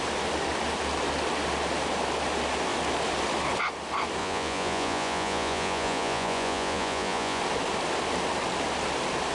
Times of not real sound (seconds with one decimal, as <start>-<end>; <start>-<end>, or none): 4.2-7.4

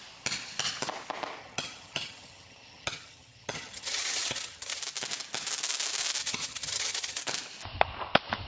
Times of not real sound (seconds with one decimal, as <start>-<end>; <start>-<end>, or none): 1.4-4.8; 6.2-7.2

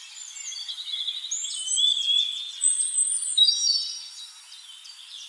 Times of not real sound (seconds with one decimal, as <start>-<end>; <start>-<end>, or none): none

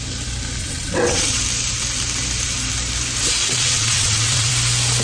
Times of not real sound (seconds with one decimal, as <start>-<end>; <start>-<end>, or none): 0.6-1.3; 3.4-4.5

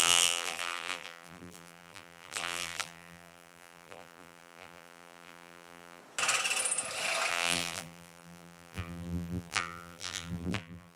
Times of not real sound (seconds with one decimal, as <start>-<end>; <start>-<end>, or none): 0.0-6.0; 7.3-11.0

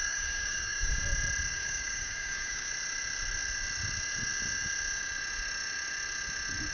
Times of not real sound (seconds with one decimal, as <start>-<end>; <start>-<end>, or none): 0.0-0.9; 1.5-2.7